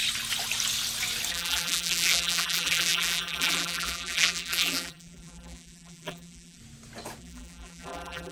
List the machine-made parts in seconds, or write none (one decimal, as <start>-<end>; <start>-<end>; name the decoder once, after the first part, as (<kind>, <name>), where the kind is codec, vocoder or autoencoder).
1.3-6.6 (vocoder, BigVGAN v2); 7.2-8.3